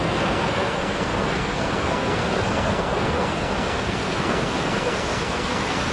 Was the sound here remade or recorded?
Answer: remade